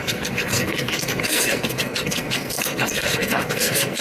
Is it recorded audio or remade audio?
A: remade